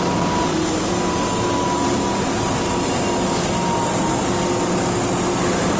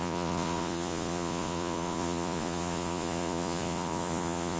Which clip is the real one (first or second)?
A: first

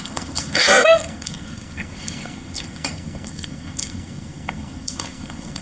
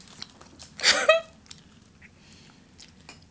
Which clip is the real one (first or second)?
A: second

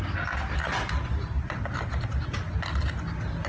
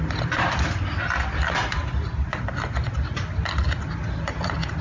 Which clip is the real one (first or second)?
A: first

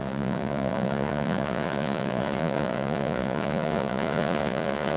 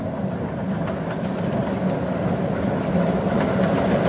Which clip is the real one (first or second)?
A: second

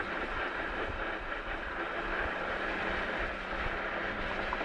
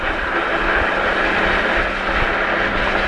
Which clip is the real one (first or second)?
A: second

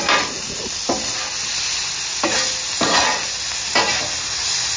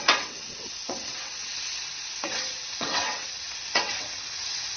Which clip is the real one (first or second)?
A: first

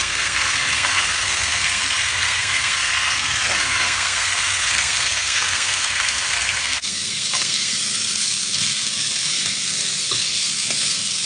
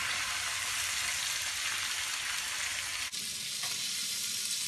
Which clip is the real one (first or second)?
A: second